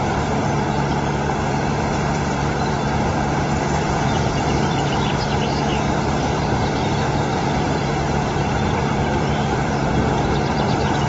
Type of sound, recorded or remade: remade